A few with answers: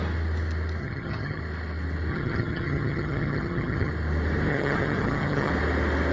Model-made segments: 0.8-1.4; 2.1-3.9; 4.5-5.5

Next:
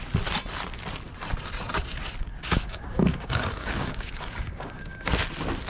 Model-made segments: 2.2-5.1

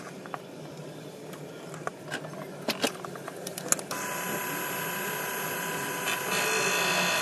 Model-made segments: none

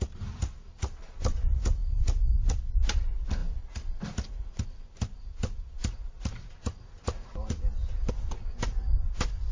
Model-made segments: none

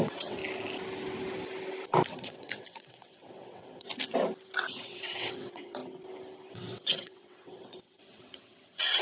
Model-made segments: 0.0-0.4; 2.1-3.9; 4.6-5.8; 6.5-9.0

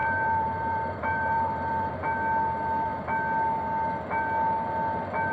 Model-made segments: 0.0-1.9